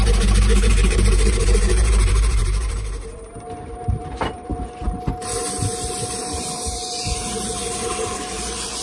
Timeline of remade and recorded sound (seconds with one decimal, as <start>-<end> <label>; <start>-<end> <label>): 0.0-4.5 remade; 4.5-6.2 recorded; 6.2-8.8 remade